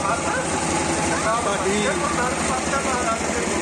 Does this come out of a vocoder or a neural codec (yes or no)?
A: no